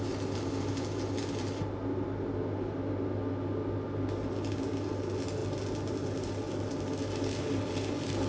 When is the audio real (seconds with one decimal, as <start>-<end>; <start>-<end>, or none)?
0.0-8.3